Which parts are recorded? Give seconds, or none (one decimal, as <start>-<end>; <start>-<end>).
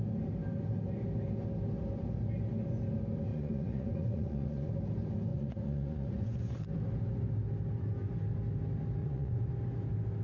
0.0-3.3; 4.7-5.3; 6.6-9.0; 9.5-10.2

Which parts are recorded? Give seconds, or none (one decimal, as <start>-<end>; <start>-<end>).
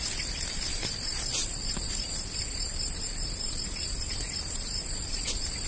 0.0-5.7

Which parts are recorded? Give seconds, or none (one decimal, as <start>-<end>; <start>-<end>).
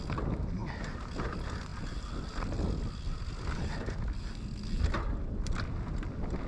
0.0-6.5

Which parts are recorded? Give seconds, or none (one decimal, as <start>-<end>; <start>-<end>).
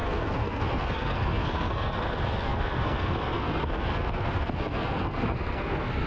none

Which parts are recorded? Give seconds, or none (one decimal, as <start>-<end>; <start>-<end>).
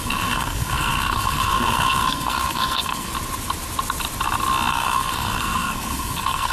3.1-4.7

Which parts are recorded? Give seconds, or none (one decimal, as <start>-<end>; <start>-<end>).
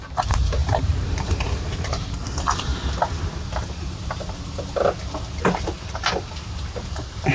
0.0-0.6; 1.3-7.3